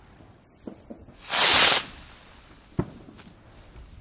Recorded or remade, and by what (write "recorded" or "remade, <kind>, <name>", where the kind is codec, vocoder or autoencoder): recorded